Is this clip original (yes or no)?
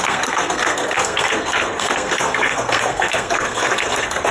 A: no